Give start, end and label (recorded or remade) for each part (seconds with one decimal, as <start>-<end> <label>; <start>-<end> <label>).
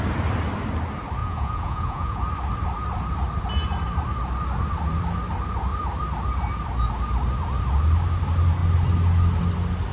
0.0-1.2 recorded; 1.2-2.2 remade; 2.2-9.9 recorded